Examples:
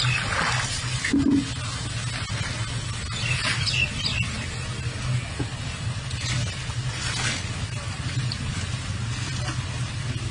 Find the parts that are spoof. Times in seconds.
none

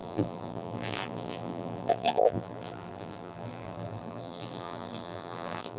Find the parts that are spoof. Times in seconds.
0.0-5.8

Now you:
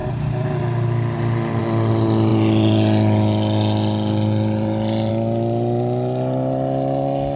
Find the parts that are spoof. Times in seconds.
none

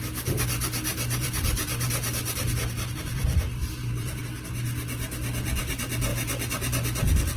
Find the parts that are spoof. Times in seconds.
0.9-4.2; 6.1-7.4

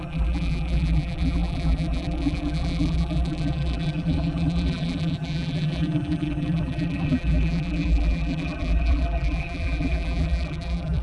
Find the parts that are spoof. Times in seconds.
0.0-11.0

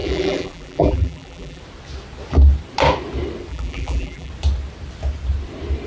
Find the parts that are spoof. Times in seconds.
0.0-1.6; 3.5-4.3

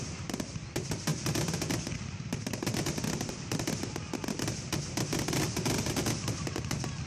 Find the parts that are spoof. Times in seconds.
none

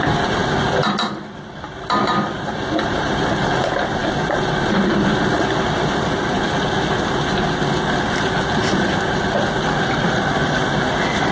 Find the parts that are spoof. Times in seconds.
0.0-0.4; 1.2-4.0; 8.6-11.3